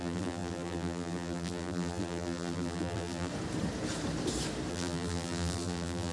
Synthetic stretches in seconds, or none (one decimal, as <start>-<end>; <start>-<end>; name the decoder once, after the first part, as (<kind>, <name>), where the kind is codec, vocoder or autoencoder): 0.0-3.3 (vocoder, BigVGAN v2); 4.7-6.1